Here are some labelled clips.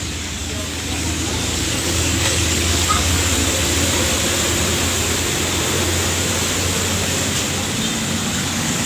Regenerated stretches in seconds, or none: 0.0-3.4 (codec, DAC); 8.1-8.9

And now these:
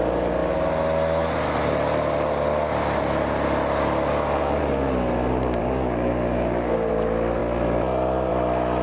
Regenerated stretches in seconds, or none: 5.6-6.9 (codec, DAC)

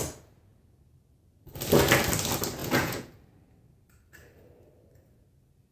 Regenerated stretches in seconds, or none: 2.6-3.1 (vocoder, Vocos)